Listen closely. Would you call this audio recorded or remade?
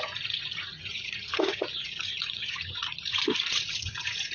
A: remade